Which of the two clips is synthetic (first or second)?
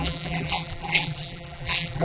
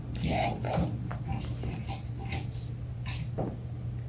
first